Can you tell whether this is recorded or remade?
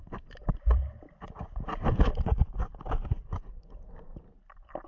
remade